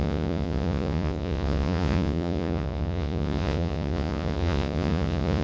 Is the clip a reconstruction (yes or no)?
yes